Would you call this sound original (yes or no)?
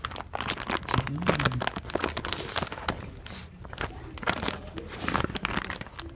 yes